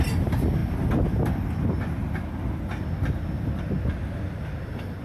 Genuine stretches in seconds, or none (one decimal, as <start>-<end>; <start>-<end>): 0.0-5.0